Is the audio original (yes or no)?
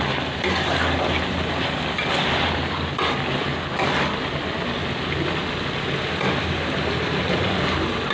yes